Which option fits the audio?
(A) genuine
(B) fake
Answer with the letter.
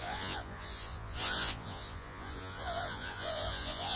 B